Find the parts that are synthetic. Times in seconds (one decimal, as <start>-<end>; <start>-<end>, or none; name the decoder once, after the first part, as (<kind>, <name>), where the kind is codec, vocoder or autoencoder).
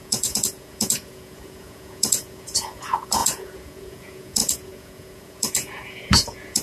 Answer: 0.0-6.6 (vocoder, Vocos)